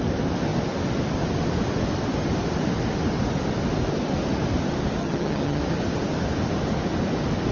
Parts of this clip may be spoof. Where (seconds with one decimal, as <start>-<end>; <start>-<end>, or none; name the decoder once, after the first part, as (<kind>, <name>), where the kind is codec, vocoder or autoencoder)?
5.0-5.6 (vocoder, HiFi-GAN)